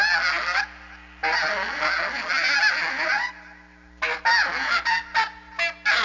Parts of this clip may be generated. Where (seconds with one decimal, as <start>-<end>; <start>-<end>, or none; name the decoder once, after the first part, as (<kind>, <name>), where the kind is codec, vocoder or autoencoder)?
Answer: none